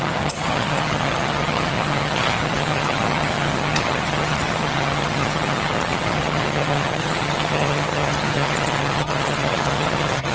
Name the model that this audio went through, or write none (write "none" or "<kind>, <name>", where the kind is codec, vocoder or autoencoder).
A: vocoder, HiFi-GAN